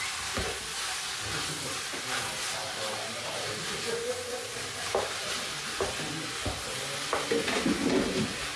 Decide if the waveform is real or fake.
real